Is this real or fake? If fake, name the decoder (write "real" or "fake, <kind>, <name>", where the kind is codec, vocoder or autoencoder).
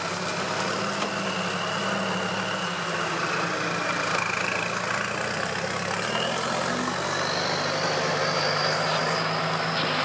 real